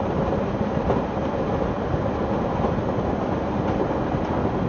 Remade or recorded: recorded